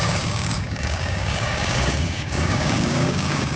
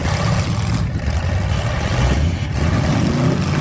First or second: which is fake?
first